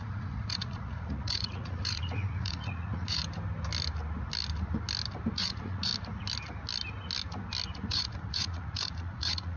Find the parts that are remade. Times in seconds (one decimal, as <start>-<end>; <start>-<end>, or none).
0.0-3.2; 5.3-5.9; 7.8-9.6

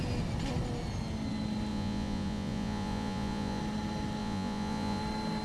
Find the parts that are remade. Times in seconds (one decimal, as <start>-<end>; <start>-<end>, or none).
1.7-3.6; 4.2-5.0

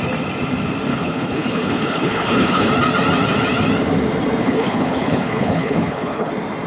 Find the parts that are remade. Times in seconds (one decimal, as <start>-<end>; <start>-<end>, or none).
0.9-2.7; 4.4-6.3

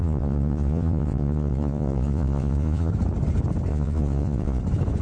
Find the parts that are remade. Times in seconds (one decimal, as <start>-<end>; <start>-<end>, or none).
0.0-2.9; 3.7-4.6

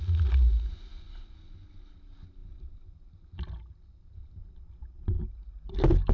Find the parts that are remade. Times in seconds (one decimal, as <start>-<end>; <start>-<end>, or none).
none

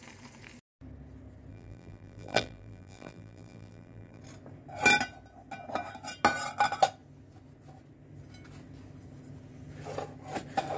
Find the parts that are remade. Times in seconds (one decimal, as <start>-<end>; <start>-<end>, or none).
1.5-4.2